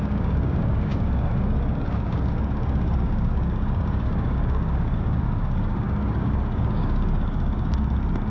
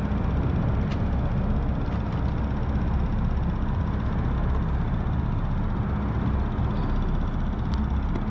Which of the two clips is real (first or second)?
second